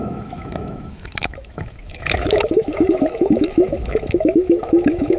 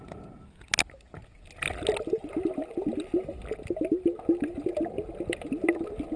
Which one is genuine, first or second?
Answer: second